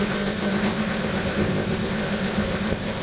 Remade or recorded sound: remade